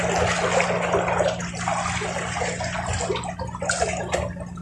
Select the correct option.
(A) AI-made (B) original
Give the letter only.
B